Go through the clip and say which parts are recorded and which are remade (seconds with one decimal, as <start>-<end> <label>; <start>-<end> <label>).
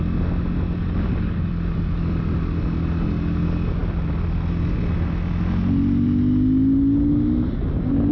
0.0-8.1 recorded